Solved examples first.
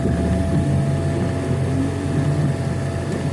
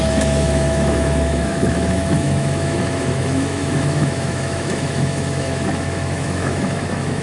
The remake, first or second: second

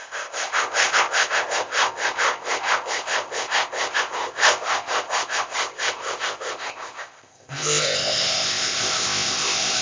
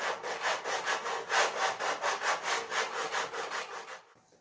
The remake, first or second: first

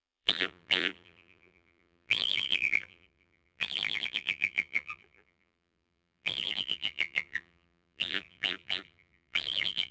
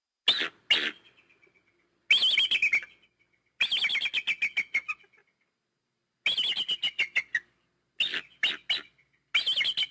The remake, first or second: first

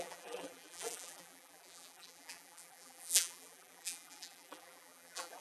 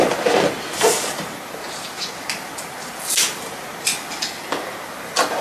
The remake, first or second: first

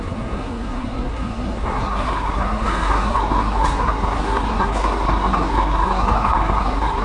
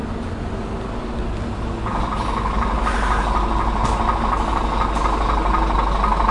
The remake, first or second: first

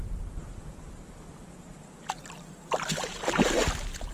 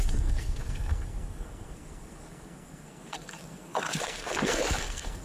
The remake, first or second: second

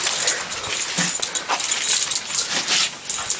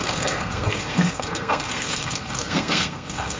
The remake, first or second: second